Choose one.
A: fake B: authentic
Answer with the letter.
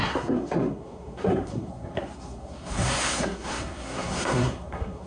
A